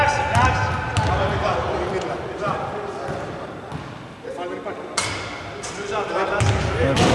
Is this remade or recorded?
recorded